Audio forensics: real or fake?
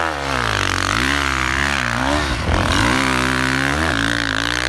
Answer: real